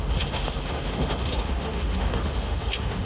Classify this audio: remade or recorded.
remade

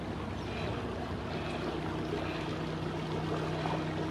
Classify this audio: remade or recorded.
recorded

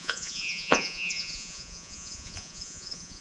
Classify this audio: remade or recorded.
remade